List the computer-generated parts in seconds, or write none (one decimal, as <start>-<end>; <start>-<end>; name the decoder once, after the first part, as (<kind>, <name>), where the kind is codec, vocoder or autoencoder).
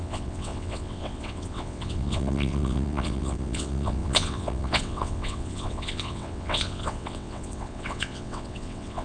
0.0-9.0 (vocoder, WaveNeXt)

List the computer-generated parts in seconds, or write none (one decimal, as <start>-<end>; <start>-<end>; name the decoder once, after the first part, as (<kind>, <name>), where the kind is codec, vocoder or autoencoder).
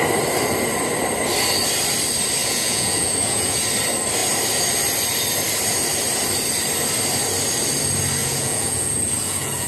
2.4-3.6 (vocoder, Vocos); 8.2-9.7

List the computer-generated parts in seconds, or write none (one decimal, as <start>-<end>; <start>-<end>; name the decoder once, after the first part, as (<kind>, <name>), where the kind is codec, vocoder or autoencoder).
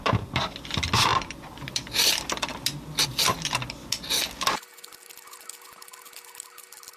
none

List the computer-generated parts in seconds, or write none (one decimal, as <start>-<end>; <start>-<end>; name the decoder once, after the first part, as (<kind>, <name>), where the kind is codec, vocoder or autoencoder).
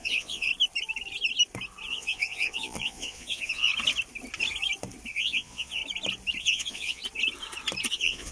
0.0-0.5 (vocoder, Vocos); 1.9-3.7; 5.1-5.8; 6.4-7.0; 7.9-8.3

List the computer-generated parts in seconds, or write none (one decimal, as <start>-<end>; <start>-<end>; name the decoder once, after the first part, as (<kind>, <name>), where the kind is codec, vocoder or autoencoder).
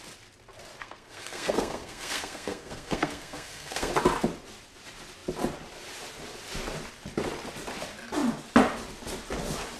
0.8-3.9 (codec, SNAC)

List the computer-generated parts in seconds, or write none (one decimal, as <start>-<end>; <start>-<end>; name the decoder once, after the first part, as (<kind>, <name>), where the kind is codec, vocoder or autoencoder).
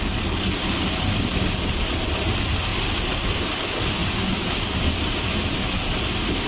none